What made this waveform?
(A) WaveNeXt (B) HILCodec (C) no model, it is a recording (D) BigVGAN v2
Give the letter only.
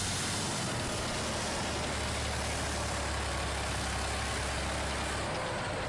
C